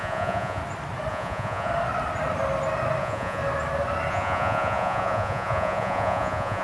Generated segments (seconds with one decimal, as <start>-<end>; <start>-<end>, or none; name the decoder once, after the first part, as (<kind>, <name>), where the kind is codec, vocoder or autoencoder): 0.0-0.6 (vocoder, Vocos); 1.1-1.7; 3.0-3.4; 4.1-6.6